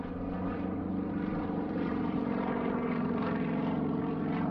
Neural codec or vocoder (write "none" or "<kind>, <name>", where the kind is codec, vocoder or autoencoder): vocoder, BigVGAN v2